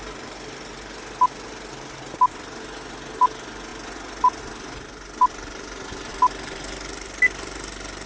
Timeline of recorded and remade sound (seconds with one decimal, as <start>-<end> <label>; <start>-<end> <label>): 0.0-8.1 recorded